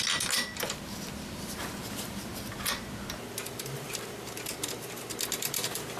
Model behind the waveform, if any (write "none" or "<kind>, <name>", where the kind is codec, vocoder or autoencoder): none